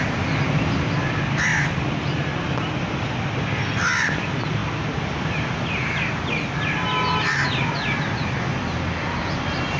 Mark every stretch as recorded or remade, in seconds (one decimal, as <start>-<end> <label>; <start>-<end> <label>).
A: 0.0-9.8 recorded